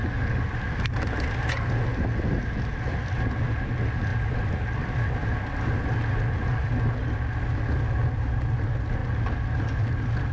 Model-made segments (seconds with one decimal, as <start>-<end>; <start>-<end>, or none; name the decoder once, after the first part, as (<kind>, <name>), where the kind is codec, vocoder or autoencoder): none